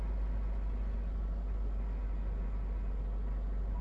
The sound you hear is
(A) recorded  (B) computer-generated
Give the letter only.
A